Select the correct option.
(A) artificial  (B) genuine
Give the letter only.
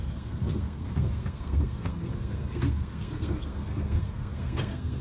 A